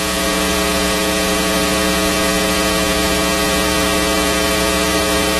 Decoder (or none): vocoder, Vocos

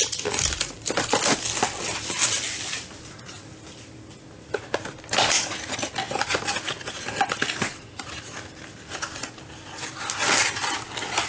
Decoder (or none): none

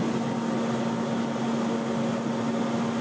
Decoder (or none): none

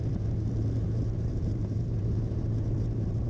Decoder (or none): vocoder, BigVGAN v2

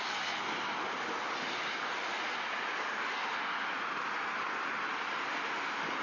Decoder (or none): none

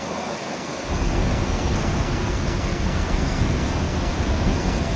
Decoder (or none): codec, SNAC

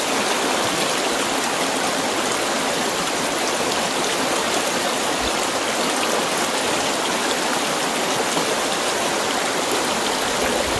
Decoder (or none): none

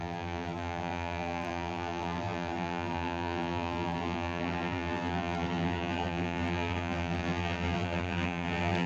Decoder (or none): vocoder, BigVGAN v2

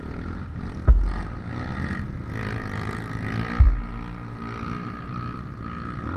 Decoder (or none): none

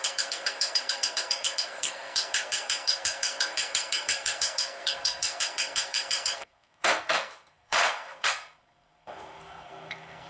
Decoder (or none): codec, SNAC